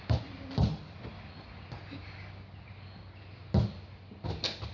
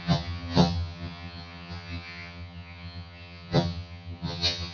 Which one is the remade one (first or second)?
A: second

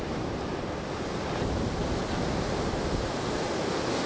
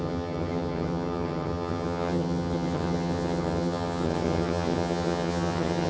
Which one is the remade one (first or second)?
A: second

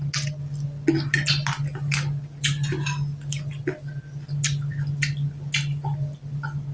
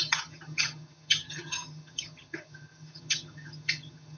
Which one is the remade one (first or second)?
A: second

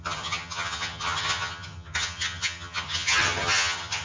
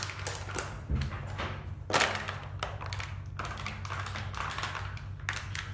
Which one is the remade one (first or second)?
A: first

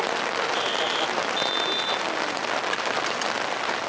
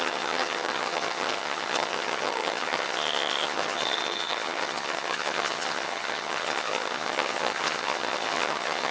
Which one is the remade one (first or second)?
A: second